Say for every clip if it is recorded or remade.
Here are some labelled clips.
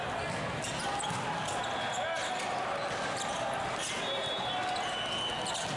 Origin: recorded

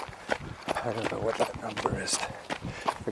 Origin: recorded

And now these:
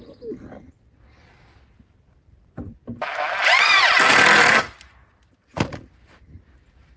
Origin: recorded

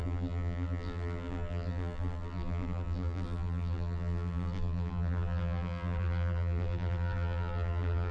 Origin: remade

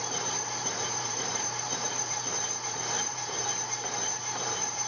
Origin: remade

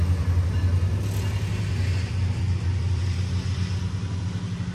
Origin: recorded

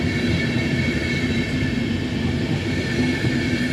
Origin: recorded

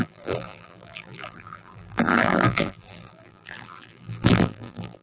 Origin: remade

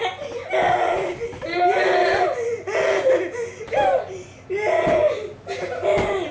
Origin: recorded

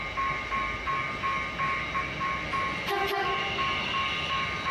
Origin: recorded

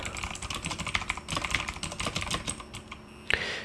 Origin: remade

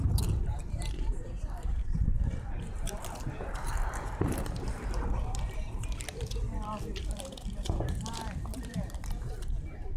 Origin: remade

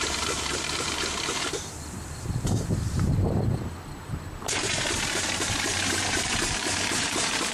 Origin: remade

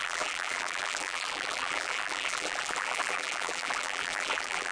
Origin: remade